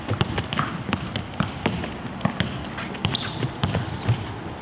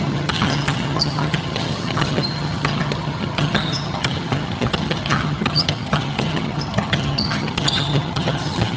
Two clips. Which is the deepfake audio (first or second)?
second